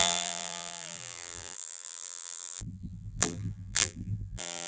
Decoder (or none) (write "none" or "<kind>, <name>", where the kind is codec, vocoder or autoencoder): vocoder, BigVGAN v2